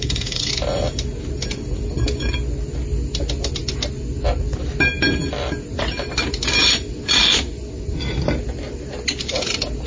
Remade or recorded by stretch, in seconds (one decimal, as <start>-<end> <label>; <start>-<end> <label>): 0.0-0.5 remade; 0.5-9.9 recorded